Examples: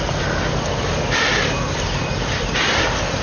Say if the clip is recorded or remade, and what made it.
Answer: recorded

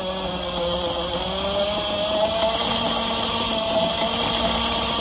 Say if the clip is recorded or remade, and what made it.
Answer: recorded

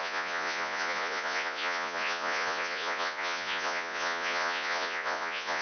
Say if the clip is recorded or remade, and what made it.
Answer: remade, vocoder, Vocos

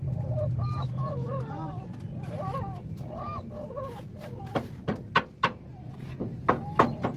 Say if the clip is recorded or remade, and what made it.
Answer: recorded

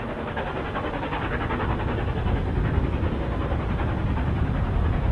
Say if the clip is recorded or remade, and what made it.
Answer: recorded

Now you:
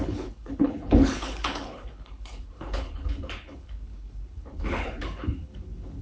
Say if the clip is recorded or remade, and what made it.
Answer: remade, codec, HILCodec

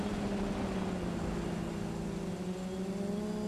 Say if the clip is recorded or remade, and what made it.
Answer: recorded